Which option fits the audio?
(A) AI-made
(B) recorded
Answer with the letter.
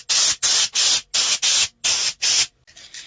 B